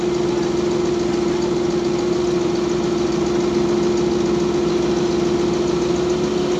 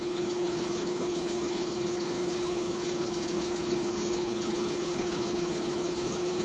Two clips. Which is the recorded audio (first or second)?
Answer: first